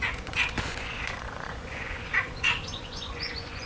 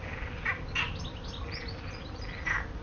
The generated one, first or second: first